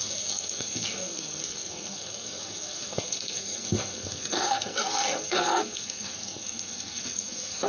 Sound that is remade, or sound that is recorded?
remade